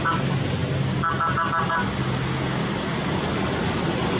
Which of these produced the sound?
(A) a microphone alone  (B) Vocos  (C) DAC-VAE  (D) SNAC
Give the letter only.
A